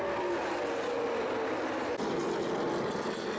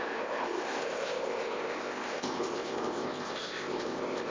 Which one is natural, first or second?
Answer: first